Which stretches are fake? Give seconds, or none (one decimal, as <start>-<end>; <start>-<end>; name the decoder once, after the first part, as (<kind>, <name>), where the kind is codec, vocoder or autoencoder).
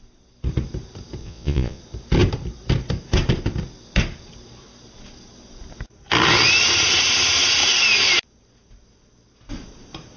1.2-1.8 (vocoder, Vocos)